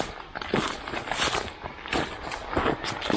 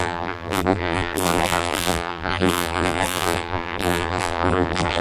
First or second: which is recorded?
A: first